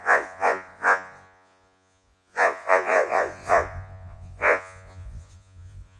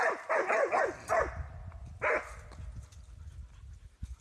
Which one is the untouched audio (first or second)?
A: second